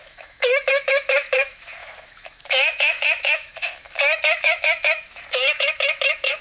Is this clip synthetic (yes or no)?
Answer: yes